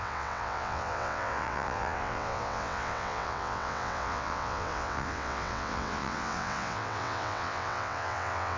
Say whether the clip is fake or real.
fake